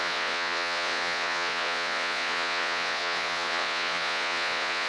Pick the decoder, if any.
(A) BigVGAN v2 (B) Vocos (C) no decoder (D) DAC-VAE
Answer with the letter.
B